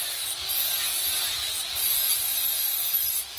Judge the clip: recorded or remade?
recorded